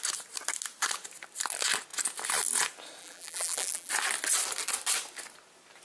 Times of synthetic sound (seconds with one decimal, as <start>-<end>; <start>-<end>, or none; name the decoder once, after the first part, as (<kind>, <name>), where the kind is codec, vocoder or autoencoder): 3.0-3.9 (vocoder, BigVGAN v2)